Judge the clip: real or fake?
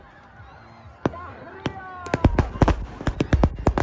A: real